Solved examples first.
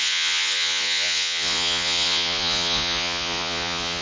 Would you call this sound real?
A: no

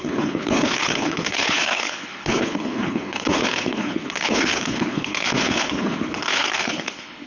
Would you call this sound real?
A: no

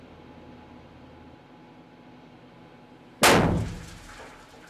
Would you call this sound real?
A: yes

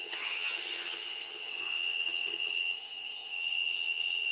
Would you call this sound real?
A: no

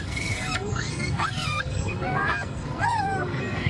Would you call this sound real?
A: no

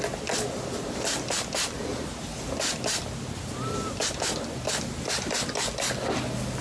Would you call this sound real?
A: yes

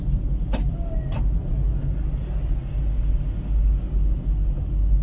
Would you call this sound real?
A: yes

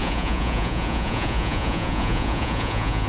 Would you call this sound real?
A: no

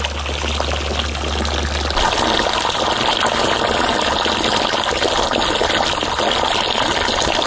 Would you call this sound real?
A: yes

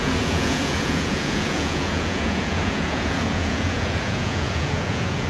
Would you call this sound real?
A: no